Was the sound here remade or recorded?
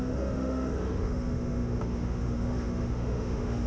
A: remade